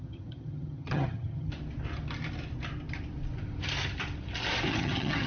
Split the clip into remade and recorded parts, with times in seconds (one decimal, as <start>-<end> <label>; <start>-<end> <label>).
0.0-1.5 remade; 1.5-4.7 recorded; 4.7-5.3 remade